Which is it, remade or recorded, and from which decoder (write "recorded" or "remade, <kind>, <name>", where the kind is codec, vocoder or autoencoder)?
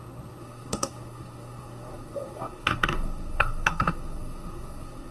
remade, codec, SNAC